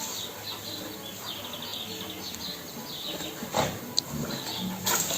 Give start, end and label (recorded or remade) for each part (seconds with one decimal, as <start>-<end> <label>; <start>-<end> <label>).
0.0-5.2 recorded